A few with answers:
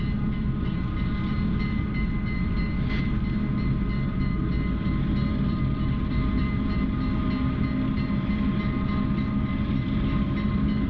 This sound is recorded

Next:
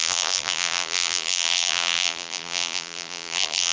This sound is remade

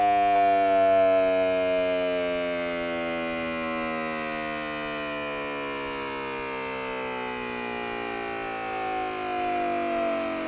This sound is recorded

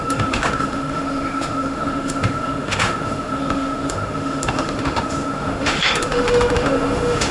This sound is remade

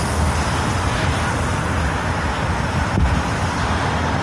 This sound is recorded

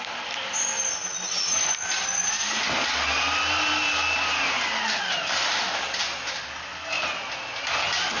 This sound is recorded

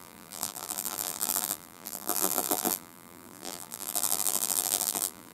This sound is remade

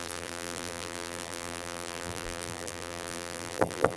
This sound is remade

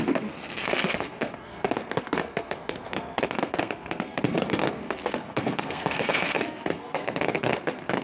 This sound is remade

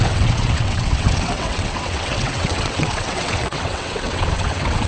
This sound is remade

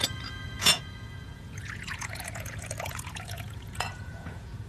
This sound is remade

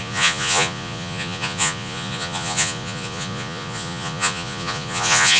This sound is remade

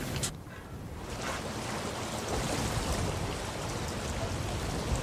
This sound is recorded